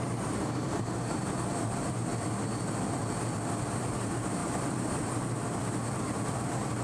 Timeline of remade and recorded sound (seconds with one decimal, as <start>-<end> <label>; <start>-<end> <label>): 0.0-2.1 remade; 2.1-3.8 recorded; 3.8-6.8 remade